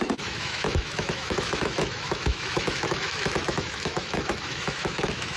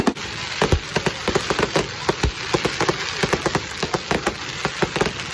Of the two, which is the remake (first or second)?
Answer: first